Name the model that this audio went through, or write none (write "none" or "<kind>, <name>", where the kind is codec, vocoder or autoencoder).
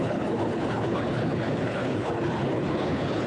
codec, HILCodec